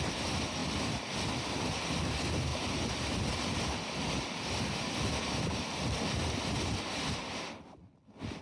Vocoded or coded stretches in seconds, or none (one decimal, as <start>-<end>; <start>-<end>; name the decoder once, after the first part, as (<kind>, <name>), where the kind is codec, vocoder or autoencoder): 2.5-3.0 (vocoder, BigVGAN v2)